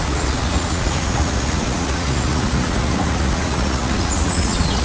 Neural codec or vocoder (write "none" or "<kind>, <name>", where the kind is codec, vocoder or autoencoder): vocoder, Vocos